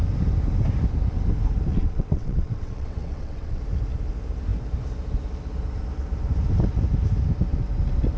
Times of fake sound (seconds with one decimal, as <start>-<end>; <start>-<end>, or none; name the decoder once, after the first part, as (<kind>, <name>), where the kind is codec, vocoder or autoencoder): 1.7-3.6 (vocoder, WaveNeXt)